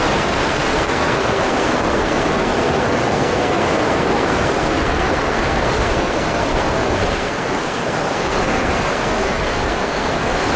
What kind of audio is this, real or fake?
fake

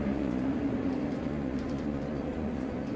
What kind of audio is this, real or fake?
fake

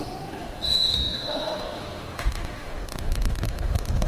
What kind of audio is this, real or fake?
fake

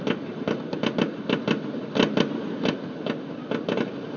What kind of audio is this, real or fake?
real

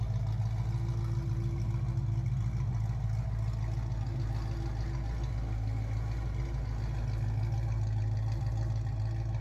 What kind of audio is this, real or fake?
real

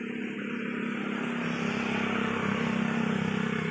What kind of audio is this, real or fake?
real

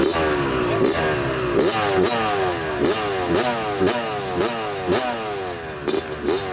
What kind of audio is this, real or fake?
real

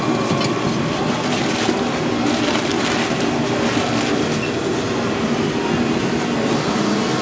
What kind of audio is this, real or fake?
real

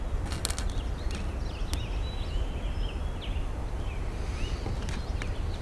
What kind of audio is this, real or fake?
real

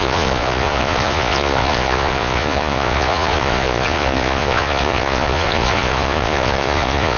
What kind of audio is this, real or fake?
fake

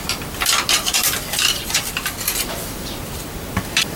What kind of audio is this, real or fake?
fake